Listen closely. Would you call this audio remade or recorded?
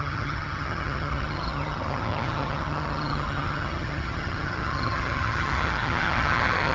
remade